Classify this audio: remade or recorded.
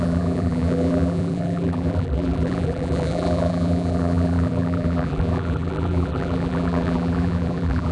remade